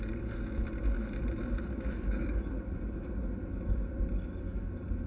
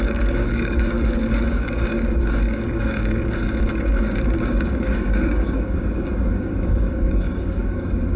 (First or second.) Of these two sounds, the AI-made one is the second